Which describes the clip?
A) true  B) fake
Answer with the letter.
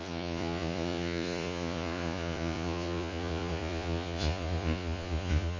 B